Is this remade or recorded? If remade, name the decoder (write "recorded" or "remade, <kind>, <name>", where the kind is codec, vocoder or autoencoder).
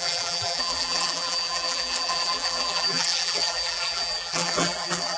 remade, vocoder, BigVGAN v2